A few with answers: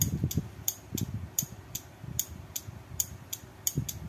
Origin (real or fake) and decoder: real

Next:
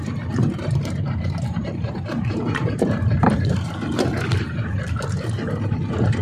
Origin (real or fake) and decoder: fake, vocoder, BigVGAN v2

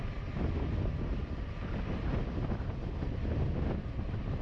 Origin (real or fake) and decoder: real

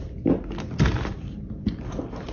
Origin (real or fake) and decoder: real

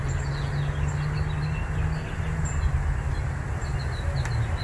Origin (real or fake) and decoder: real